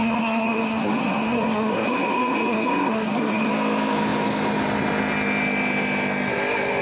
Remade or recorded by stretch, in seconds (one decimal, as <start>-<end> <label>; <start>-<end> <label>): 0.0-3.5 remade; 3.5-6.8 recorded